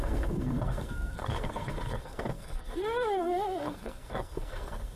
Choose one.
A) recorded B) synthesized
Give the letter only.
B